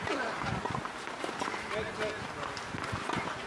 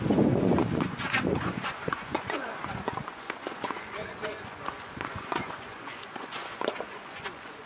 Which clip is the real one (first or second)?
first